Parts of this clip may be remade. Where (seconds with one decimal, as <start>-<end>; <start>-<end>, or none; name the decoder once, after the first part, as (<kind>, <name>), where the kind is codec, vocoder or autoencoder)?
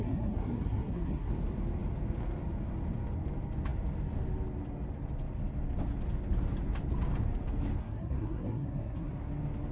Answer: 0.0-1.3 (codec, SNAC); 7.8-9.1